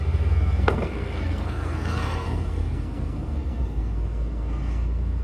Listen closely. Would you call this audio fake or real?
fake